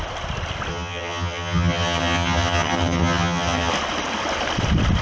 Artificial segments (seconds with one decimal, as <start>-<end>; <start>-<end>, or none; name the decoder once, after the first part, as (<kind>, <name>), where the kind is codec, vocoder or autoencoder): 0.7-3.7 (vocoder, HiFi-GAN)